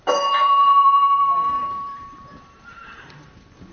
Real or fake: fake